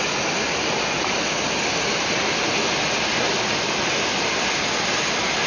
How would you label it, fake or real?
real